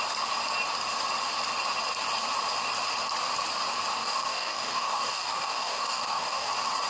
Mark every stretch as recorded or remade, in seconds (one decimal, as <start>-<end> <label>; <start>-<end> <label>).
0.0-4.0 recorded; 4.0-6.5 remade; 6.5-6.9 recorded